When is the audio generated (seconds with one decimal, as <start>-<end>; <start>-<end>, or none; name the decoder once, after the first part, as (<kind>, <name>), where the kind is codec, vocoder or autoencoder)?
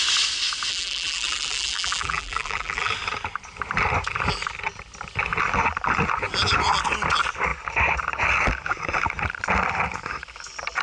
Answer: 0.7-2.9 (vocoder, BigVGAN v2)